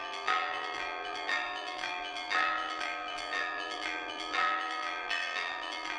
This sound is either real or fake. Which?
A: fake